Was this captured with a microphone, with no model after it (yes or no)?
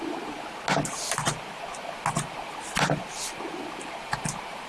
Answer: yes